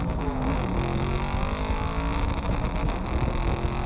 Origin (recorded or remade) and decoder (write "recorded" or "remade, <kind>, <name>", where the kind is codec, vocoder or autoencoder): recorded